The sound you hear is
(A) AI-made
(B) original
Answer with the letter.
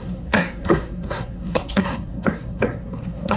A